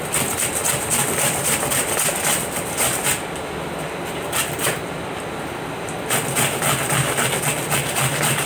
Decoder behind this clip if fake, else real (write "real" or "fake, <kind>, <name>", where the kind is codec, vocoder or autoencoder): real